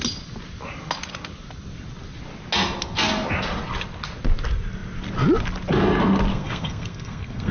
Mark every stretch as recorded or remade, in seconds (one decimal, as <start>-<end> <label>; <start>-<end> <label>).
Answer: 0.0-6.3 recorded; 6.3-7.5 remade